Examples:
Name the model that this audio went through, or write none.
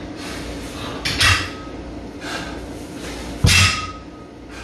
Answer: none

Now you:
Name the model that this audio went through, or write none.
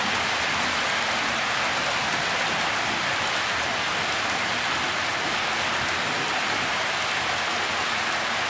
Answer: none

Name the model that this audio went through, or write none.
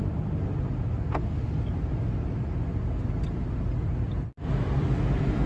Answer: none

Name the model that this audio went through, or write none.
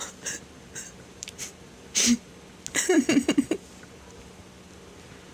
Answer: none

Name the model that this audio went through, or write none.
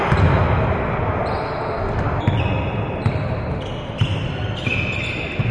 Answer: none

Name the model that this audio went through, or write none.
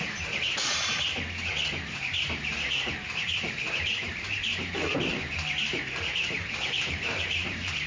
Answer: vocoder, BigVGAN v2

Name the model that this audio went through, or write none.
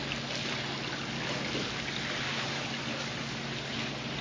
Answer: none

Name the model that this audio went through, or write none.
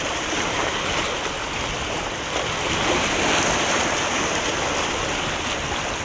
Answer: none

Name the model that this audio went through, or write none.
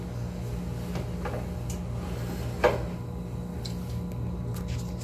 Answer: none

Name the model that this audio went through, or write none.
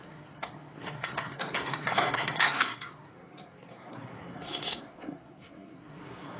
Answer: codec, SNAC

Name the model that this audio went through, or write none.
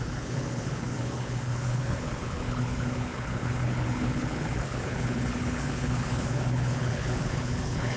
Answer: codec, HILCodec